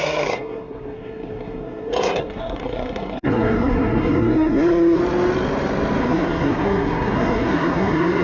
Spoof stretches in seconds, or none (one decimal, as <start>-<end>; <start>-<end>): 0.0-5.0; 6.0-8.2